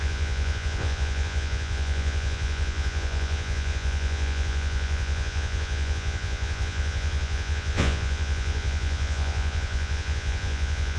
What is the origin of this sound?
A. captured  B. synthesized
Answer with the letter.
B